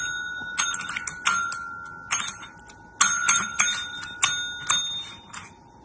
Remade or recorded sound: recorded